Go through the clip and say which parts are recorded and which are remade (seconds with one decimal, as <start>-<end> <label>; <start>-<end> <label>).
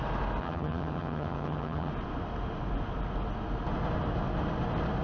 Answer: 0.0-0.4 recorded; 0.4-1.9 remade; 1.9-5.0 recorded